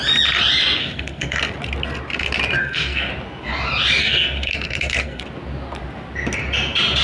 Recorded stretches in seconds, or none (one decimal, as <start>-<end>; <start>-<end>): 0.0-0.8; 1.5-2.6; 3.1-4.0; 5.2-7.0